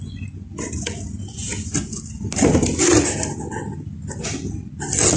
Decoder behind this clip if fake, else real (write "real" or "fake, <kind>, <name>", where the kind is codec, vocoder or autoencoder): real